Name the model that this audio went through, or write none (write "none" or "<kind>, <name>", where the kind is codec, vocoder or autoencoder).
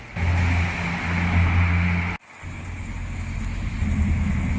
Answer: none